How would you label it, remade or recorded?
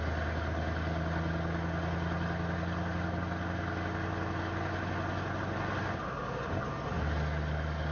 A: recorded